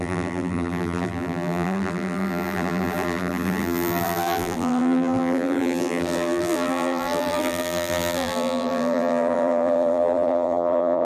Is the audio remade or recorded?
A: remade